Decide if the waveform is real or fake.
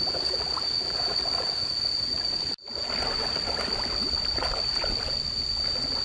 real